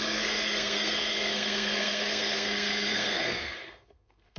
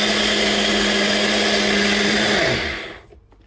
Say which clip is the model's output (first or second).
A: first